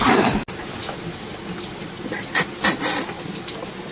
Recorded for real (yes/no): yes